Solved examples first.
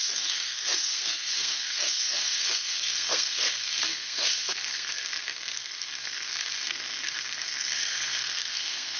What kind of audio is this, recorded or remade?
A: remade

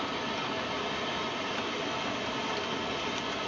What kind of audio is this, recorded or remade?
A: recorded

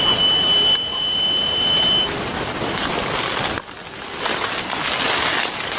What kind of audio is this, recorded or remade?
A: recorded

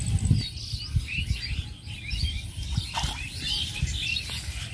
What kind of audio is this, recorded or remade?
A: recorded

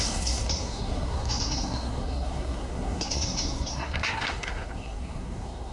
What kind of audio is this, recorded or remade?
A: remade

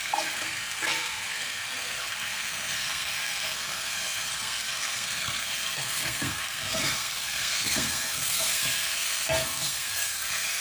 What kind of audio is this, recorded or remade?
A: remade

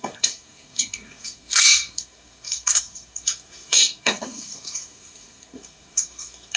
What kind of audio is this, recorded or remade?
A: remade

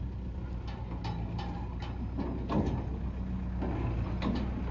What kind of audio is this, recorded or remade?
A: recorded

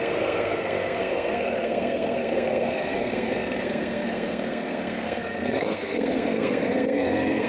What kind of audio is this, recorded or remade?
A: remade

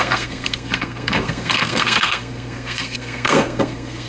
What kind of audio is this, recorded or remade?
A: remade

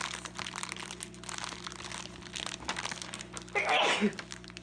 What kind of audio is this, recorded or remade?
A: recorded